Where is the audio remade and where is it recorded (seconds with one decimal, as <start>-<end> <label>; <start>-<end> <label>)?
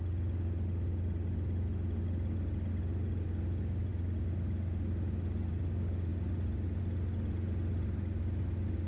0.0-8.9 recorded